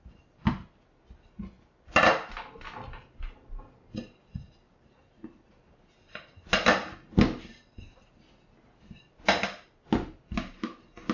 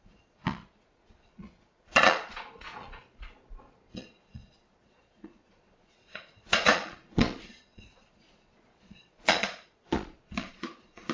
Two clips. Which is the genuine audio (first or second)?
first